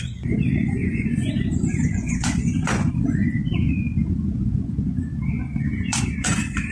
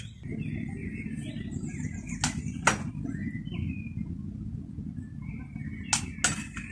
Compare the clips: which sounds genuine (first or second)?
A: second